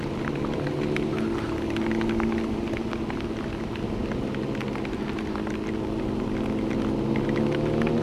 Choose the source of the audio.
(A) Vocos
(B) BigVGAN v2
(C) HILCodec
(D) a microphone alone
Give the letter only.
D